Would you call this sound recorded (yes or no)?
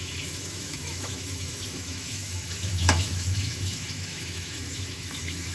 no